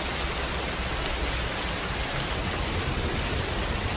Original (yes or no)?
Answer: yes